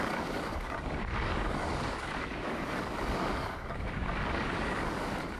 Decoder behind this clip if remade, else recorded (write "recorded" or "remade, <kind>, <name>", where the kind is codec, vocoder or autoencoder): remade, codec, DAC